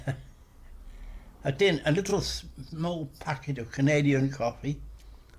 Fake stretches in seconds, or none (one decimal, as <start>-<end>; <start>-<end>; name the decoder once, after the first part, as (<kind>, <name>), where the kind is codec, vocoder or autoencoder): 2.1-5.4 (vocoder, BigVGAN v2)